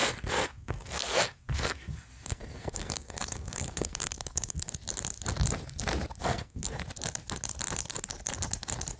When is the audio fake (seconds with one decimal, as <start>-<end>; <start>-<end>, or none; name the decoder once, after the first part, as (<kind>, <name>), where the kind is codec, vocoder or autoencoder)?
0.0-4.7 (codec, SNAC); 6.2-6.8